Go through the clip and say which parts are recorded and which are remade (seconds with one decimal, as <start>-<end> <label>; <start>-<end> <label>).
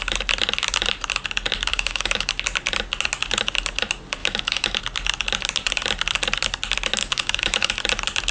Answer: 0.0-1.7 recorded; 1.7-2.3 remade; 2.3-4.2 recorded; 4.2-4.8 remade; 4.8-7.0 recorded; 7.0-7.7 remade; 7.7-8.3 recorded